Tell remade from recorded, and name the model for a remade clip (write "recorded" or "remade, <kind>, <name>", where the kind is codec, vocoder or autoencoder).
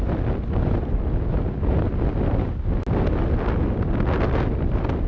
recorded